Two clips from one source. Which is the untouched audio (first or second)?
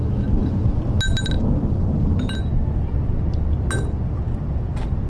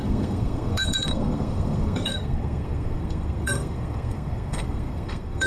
first